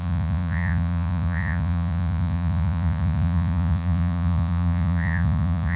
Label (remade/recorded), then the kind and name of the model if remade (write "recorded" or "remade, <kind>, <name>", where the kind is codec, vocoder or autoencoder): remade, vocoder, Vocos